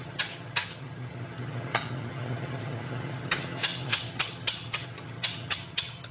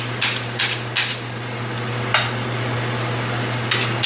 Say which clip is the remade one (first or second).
first